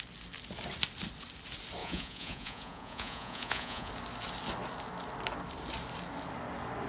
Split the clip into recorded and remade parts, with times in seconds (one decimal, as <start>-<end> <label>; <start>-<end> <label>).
0.0-1.8 recorded; 1.8-3.9 remade; 3.9-6.9 recorded